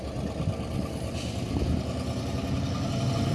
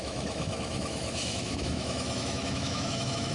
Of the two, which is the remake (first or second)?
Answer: second